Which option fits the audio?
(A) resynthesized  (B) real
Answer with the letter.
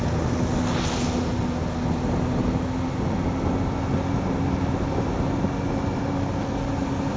B